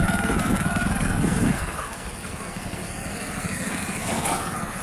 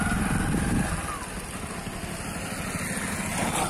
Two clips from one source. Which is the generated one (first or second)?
first